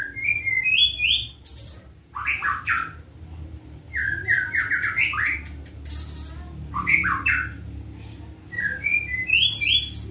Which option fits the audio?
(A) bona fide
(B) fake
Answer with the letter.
A